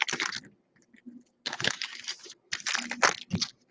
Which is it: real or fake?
real